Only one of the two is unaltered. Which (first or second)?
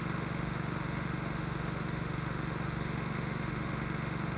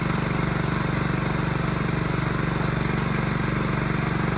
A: second